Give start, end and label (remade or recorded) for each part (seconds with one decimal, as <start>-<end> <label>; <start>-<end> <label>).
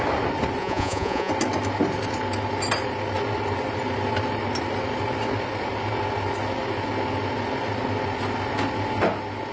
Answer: 0.0-0.6 recorded; 0.6-1.3 remade; 1.3-9.5 recorded